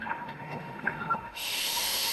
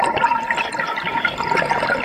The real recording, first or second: second